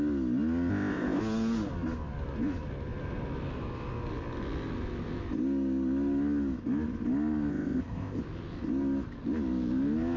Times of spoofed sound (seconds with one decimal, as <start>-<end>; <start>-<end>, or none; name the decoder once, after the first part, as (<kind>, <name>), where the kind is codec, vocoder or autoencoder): 0.7-1.2 (codec, ZipCodec); 7.5-8.2